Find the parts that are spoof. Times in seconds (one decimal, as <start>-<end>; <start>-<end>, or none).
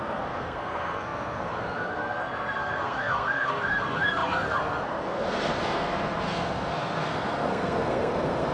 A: 0.0-8.5